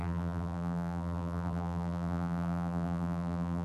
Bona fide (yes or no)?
no